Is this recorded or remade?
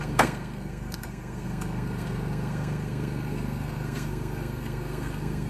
remade